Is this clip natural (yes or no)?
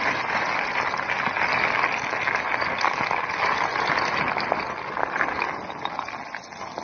yes